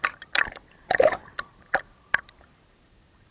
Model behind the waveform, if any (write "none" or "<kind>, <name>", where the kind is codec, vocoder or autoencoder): none